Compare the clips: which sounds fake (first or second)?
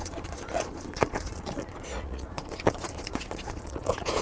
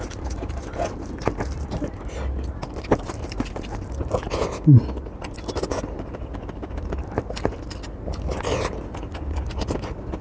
first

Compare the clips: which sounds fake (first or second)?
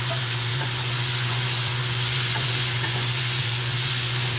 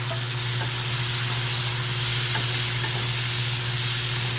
first